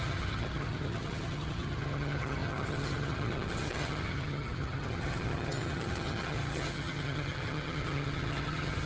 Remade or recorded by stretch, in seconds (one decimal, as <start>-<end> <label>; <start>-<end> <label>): 0.0-8.9 remade